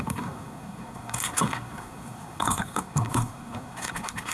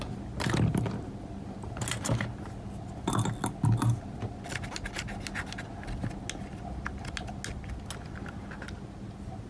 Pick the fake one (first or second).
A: first